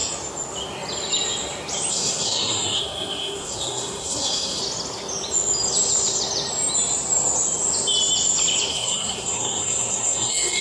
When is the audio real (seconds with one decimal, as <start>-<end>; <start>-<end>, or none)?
0.0-1.9; 4.6-8.7